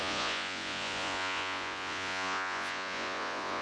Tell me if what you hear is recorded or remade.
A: remade